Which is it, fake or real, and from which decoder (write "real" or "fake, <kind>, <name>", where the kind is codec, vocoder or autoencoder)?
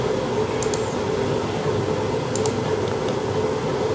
real